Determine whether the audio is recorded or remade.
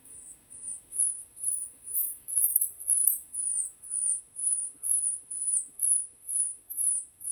remade